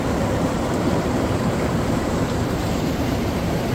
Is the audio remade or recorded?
remade